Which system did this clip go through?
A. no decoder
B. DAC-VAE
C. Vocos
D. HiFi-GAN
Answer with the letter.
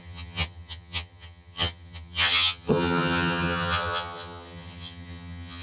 D